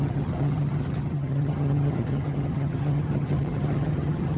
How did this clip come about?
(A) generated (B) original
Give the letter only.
A